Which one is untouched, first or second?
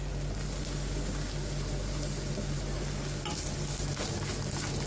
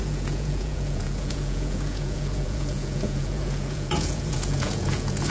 first